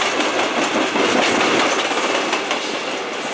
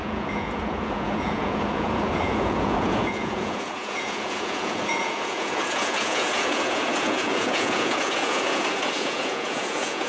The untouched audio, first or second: first